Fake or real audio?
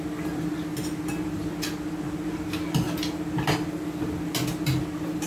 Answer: real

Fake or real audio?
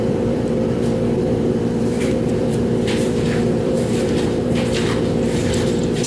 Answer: fake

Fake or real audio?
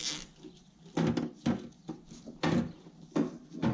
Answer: real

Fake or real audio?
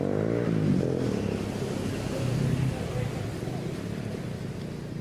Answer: real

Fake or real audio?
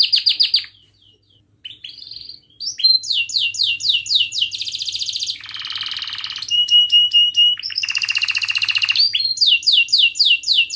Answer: real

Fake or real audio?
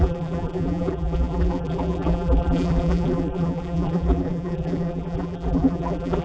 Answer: fake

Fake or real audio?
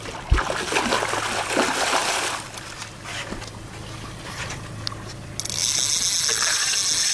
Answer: real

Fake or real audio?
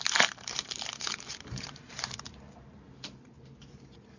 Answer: fake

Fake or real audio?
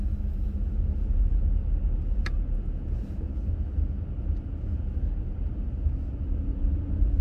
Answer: real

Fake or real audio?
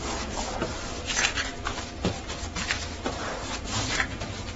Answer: real